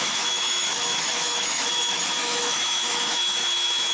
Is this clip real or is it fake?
fake